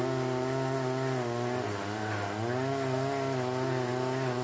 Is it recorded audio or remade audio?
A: recorded